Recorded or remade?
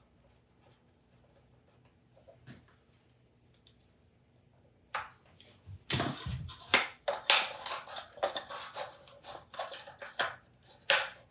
recorded